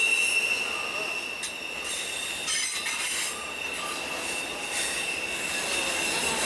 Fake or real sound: real